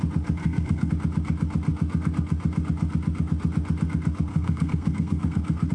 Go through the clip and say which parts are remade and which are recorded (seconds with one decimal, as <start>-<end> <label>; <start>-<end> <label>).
0.0-0.4 recorded; 0.4-0.9 remade; 0.9-4.3 recorded; 4.3-5.7 remade